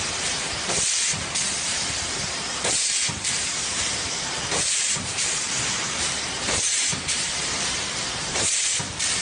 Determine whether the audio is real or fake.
fake